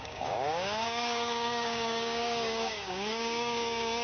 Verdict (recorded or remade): remade